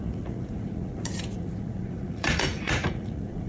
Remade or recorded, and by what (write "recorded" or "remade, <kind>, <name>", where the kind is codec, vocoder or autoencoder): remade, vocoder, Vocos